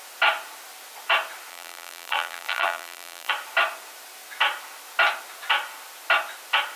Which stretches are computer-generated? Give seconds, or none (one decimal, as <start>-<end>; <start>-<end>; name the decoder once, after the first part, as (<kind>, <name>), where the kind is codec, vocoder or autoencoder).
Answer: 1.5-3.3 (vocoder, BigVGAN v2)